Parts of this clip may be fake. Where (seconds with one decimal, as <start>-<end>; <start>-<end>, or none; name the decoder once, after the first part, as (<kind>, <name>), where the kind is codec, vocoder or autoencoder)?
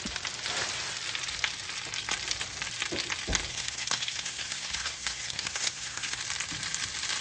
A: 3.5-6.2 (codec, SNAC)